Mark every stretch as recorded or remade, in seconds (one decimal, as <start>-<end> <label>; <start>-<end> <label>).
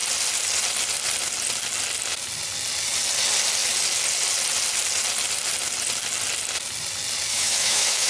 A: 0.0-7.3 recorded; 7.3-8.1 remade